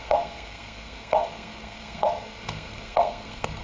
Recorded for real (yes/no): no